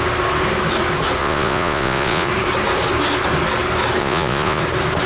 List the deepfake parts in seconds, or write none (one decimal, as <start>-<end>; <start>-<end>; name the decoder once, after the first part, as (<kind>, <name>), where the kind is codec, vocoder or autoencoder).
1.2-2.3 (vocoder, Vocos); 4.0-4.6

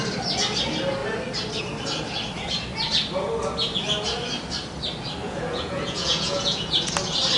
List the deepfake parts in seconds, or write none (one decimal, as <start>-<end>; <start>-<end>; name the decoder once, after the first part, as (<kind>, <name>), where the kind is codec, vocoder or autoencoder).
5.2-6.9 (vocoder, Vocos)

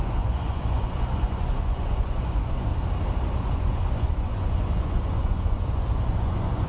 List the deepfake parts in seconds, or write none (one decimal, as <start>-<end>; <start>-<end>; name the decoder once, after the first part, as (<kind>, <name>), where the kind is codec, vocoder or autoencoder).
0.0-2.7 (vocoder, Vocos); 3.4-6.7

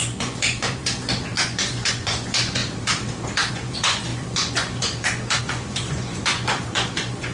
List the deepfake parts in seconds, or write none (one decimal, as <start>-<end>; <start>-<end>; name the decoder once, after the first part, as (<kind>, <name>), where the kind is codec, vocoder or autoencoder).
0.0-2.6 (vocoder, Vocos); 3.5-7.3

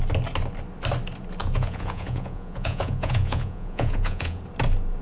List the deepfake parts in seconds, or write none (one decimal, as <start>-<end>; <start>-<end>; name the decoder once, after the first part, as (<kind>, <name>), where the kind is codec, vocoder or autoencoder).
1.4-4.4 (vocoder, Vocos)

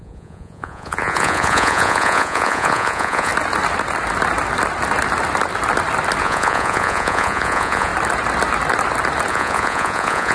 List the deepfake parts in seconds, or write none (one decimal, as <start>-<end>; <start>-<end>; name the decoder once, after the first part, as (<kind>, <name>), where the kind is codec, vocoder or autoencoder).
0.0-3.3 (vocoder, Vocos); 6.2-7.9; 9.3-10.3